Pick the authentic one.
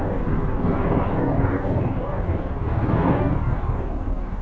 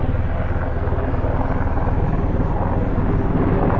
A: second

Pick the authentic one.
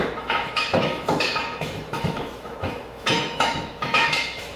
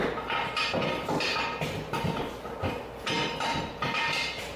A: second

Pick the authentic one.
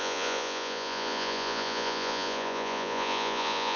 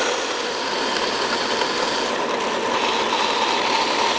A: second